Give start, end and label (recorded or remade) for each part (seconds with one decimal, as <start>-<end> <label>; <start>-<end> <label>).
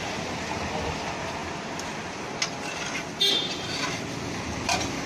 0.0-5.1 recorded